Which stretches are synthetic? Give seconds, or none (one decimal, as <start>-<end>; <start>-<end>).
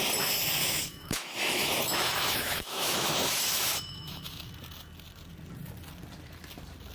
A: 0.6-4.5